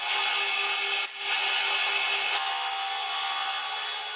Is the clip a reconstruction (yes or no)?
no